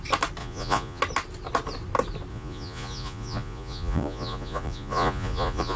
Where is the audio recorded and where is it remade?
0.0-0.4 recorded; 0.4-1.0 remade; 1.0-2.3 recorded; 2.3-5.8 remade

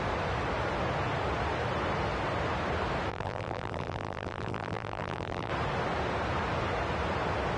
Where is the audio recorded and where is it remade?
0.0-3.1 recorded; 3.1-5.5 remade; 5.5-7.6 recorded

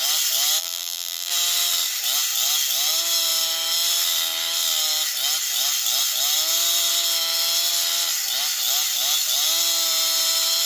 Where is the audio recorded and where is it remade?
0.0-0.6 recorded; 0.6-1.3 remade; 1.3-10.7 recorded

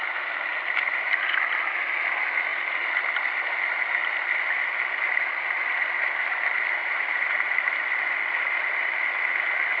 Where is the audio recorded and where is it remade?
0.0-6.8 recorded; 6.8-7.3 remade; 7.3-9.8 recorded

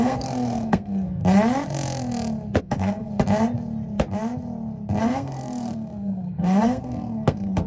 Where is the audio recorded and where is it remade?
0.0-1.2 remade; 1.2-2.6 recorded; 2.6-3.1 remade; 3.1-5.0 recorded; 5.0-7.7 remade

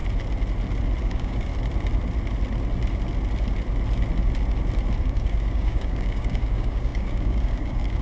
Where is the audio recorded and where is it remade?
0.0-1.0 recorded; 1.0-1.5 remade; 1.5-5.0 recorded; 5.0-8.0 remade

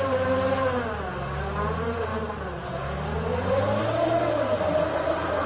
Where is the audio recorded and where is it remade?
0.0-5.5 recorded

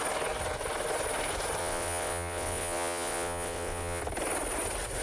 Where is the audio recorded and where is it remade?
0.0-1.6 recorded; 1.6-4.0 remade; 4.0-5.0 recorded